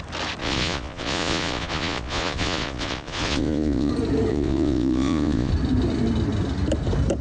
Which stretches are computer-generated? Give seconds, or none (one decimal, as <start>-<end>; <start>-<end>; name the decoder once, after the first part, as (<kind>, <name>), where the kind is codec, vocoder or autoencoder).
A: 0.4-3.9 (vocoder, Vocos); 4.3-5.5